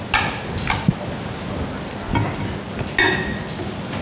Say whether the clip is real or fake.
real